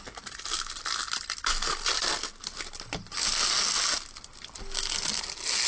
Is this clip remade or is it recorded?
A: recorded